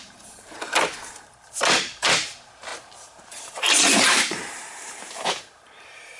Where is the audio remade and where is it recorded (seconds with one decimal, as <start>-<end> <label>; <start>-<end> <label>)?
0.0-6.2 remade